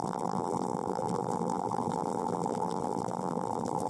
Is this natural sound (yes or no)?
no